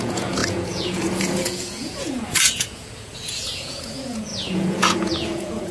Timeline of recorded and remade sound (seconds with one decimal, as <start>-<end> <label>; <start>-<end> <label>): 0.0-5.7 remade

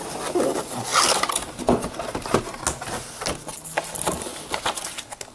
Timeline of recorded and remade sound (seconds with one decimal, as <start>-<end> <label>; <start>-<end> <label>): 0.0-5.3 recorded

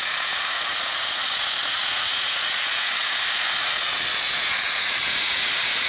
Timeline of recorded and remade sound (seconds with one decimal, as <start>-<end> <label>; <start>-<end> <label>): 0.0-5.9 remade

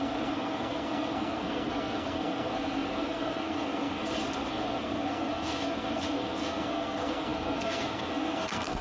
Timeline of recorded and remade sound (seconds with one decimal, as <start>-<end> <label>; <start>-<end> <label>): 0.0-8.8 remade

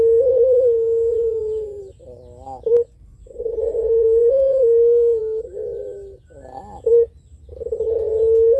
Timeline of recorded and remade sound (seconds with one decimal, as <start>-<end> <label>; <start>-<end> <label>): 0.0-1.1 recorded; 1.1-1.8 remade; 1.8-3.1 recorded; 3.1-5.2 remade; 5.2-8.6 recorded

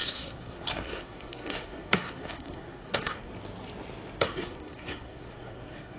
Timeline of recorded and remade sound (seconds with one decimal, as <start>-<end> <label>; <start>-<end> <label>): 0.0-3.3 remade; 3.3-4.2 recorded; 4.2-6.0 remade